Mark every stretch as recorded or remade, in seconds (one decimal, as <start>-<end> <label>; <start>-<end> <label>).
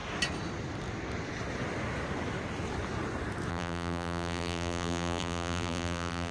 0.0-3.5 recorded; 3.5-6.3 remade